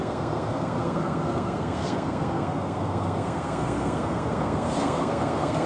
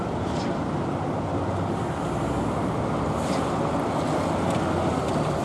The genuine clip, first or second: second